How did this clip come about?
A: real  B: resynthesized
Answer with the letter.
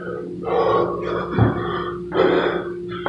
A